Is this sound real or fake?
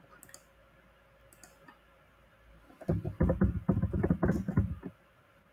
real